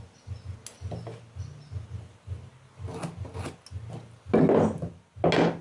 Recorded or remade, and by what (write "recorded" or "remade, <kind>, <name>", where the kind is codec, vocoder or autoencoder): recorded